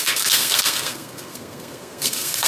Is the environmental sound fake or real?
fake